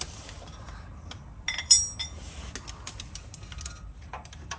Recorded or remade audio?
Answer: recorded